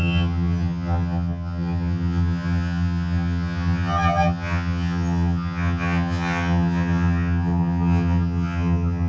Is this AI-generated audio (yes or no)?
yes